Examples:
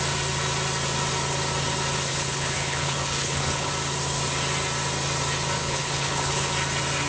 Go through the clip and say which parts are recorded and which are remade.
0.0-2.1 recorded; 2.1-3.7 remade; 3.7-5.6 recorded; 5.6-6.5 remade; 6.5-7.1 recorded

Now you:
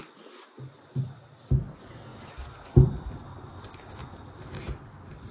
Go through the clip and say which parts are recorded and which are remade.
0.0-5.3 recorded